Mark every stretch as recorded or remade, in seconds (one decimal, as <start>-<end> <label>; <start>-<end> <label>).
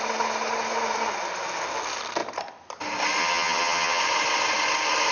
0.0-3.2 recorded; 3.2-4.0 remade; 4.0-5.1 recorded